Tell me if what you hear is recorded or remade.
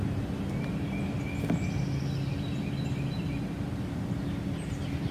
recorded